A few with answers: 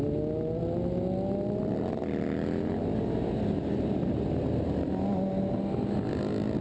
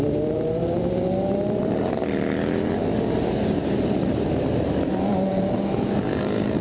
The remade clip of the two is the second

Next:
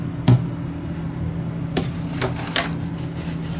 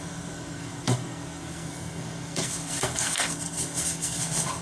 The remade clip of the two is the second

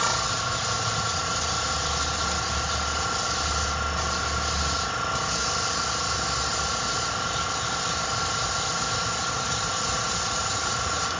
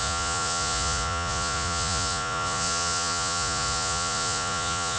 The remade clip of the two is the second